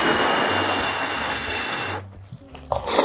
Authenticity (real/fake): real